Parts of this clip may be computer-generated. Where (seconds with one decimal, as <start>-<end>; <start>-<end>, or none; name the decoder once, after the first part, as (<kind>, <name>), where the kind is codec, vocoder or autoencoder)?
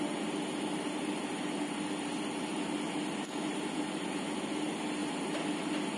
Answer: none